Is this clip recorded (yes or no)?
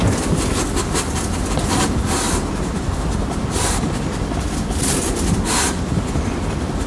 yes